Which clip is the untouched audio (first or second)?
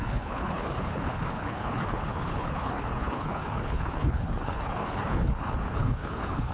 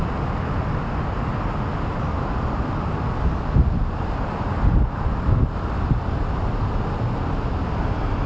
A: second